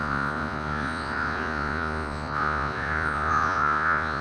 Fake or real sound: fake